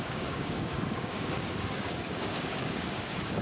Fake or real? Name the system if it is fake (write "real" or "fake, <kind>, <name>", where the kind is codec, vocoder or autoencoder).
fake, codec, DAC